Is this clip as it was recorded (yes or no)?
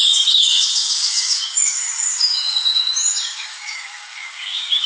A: no